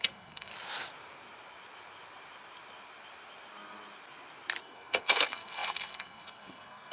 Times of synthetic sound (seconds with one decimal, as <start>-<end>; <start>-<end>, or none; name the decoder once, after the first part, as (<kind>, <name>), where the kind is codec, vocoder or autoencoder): 0.0-0.5 (codec, SNAC); 4.6-6.9